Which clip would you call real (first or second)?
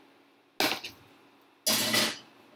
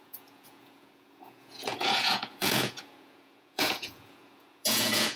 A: first